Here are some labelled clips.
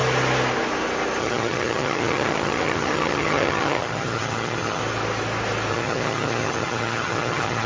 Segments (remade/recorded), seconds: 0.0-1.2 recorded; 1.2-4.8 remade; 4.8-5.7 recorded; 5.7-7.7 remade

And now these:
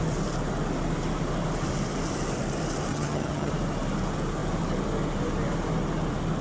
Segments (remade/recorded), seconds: 0.0-2.9 recorded; 2.9-3.5 remade; 3.5-6.4 recorded

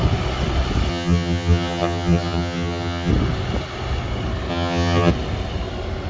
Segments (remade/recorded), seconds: 0.0-0.9 recorded; 0.9-3.1 remade; 3.1-4.5 recorded; 4.5-5.1 remade; 5.1-6.1 recorded

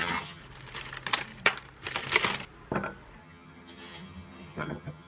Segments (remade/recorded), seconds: 0.0-0.4 remade; 0.4-3.2 recorded; 3.2-5.1 remade

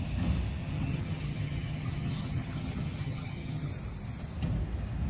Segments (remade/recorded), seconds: 0.0-0.6 recorded; 0.6-3.7 remade; 3.7-5.1 recorded

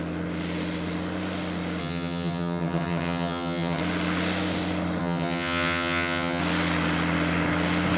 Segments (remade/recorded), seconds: 0.0-1.8 recorded; 1.8-3.8 remade; 3.8-5.0 recorded; 5.0-6.4 remade; 6.4-8.0 recorded